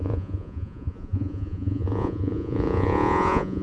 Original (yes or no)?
no